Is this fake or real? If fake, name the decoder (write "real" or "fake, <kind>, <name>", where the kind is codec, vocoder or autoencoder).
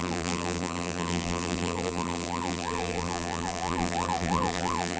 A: fake, vocoder, BigVGAN v2